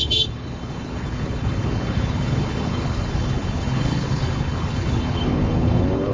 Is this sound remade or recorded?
remade